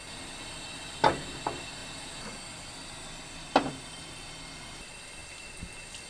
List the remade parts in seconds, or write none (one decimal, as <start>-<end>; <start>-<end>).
none